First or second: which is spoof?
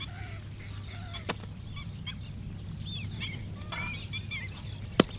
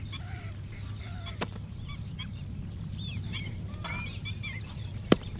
second